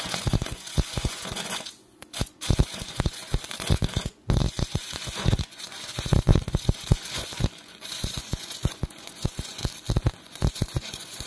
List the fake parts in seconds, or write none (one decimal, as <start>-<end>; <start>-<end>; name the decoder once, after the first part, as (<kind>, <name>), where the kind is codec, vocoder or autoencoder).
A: 0.0-9.6 (vocoder, Vocos); 10.2-11.3